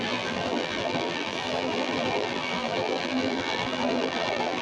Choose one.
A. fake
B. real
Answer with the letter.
A